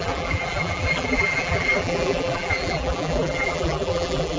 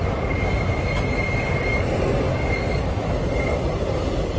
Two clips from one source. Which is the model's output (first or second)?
first